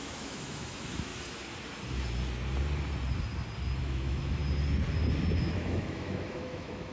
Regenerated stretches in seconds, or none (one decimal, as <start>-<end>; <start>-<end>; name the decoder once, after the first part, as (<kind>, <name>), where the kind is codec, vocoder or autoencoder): 0.0-1.1 (autoencoder, DAC-VAE); 3.8-4.4; 5.4-6.9